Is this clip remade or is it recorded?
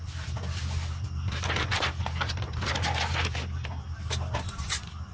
recorded